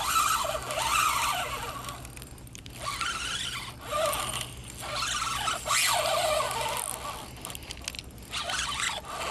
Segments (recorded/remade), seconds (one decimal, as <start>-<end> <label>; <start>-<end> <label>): 0.0-9.3 recorded

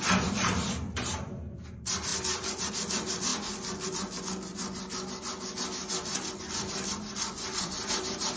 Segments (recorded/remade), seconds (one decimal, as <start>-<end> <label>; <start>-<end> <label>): 0.0-3.3 remade; 3.3-6.4 recorded; 6.4-8.4 remade

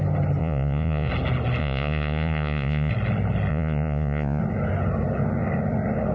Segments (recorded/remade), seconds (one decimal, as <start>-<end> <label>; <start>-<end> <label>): 0.0-0.4 recorded; 0.4-1.1 remade; 1.1-1.6 recorded; 1.6-2.9 remade; 2.9-3.5 recorded; 3.5-4.4 remade; 4.4-6.1 recorded

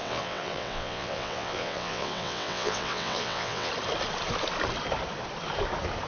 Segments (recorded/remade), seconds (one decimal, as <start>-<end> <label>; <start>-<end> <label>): 0.0-3.7 remade; 3.7-6.1 recorded

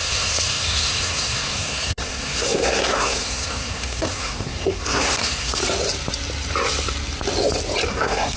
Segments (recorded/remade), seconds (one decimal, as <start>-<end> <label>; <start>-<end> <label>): 0.0-5.6 remade; 5.6-7.9 recorded; 7.9-8.4 remade

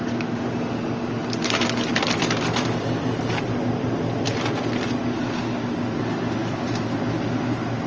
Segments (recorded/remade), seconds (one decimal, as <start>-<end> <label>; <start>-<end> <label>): 0.0-7.9 recorded